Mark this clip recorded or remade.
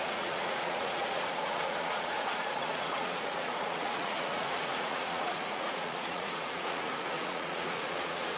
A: remade